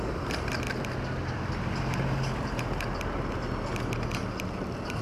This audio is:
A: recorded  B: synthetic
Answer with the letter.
A